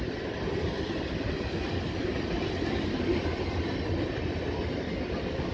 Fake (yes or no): no